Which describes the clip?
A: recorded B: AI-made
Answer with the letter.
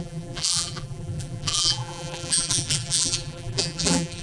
B